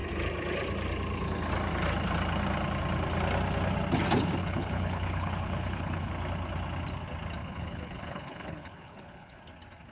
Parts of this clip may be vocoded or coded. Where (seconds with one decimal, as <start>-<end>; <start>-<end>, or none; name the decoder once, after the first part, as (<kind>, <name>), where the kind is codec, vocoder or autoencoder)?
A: 4.4-6.1 (codec, HILCodec); 7.4-9.4